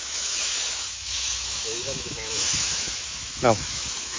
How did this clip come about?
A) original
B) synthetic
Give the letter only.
B